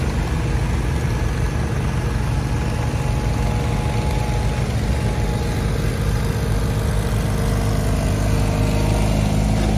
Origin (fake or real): real